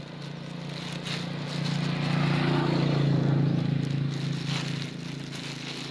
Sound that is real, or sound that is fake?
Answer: real